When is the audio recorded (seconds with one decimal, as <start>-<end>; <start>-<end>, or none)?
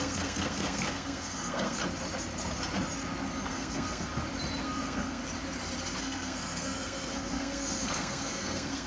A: 1.8-3.5; 4.1-4.6; 5.2-6.0